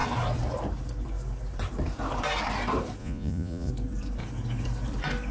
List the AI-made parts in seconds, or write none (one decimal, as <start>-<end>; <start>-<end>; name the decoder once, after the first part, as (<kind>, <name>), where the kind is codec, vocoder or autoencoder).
3.0-3.7 (vocoder, Vocos)